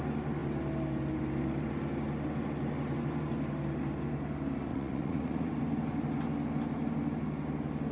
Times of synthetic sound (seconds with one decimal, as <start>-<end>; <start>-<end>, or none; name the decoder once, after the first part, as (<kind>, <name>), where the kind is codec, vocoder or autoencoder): 4.7-5.5 (vocoder, Vocos)